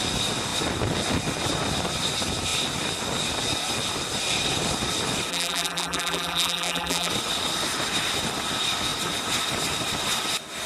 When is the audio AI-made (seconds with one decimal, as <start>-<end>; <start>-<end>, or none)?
5.3-7.1